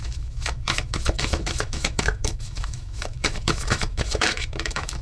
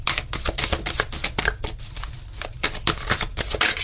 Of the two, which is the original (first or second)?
second